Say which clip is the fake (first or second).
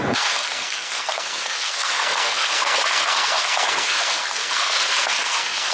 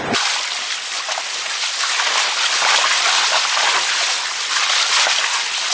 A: first